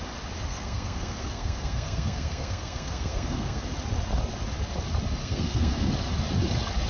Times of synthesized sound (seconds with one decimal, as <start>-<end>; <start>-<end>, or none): 0.5-3.6; 5.2-5.9